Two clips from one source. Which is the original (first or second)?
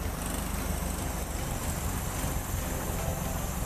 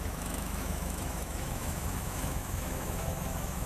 first